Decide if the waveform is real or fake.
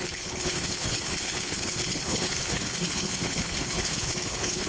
fake